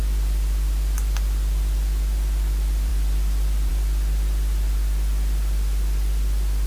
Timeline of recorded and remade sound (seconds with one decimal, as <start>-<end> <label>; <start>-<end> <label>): 0.0-6.7 recorded